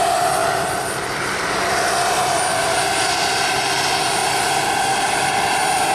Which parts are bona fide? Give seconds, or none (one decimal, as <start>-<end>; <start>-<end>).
0.0-5.9